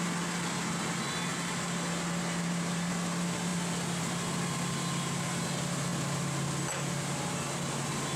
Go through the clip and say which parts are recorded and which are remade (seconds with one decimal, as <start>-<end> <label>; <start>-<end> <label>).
0.0-1.3 recorded; 1.3-2.9 remade; 2.9-8.2 recorded